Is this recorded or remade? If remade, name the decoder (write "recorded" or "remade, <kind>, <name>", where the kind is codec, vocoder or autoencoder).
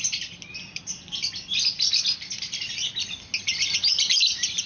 recorded